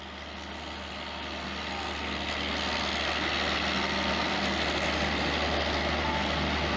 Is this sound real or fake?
real